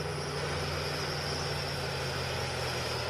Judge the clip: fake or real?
real